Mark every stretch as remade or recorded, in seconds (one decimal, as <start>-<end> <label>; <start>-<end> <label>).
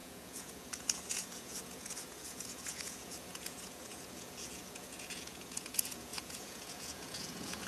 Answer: 0.0-7.7 remade